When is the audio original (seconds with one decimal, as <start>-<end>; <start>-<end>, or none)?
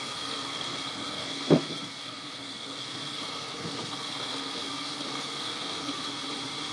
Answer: 5.9-6.7